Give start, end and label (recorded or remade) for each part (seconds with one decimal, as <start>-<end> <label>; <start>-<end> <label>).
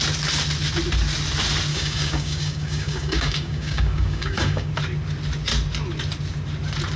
0.0-1.7 recorded; 1.7-4.7 remade; 4.7-7.0 recorded